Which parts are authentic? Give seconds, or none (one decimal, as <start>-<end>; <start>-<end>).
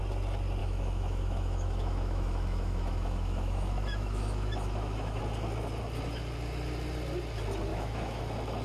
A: 0.0-0.6; 5.2-7.7; 8.2-8.6